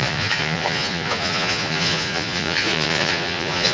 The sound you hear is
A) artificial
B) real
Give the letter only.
A